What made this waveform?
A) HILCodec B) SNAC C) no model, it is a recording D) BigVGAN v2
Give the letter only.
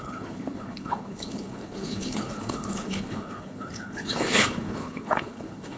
A